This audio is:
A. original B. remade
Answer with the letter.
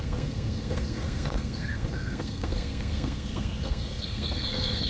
B